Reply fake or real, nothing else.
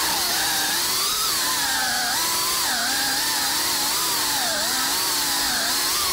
fake